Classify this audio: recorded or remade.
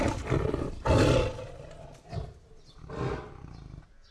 recorded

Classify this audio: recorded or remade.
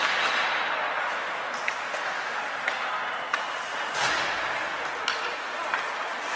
recorded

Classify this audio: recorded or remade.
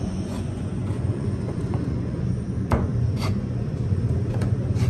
remade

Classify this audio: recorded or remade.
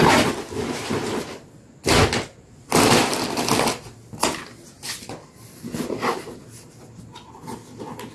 recorded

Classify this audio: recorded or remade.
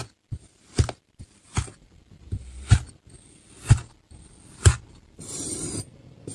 recorded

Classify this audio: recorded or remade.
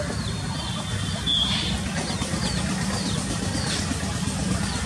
recorded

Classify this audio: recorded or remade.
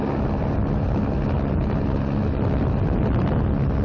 recorded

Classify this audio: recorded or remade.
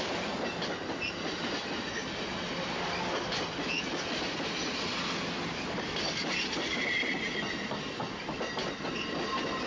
recorded